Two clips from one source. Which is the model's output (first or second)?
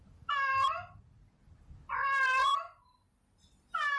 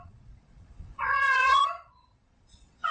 second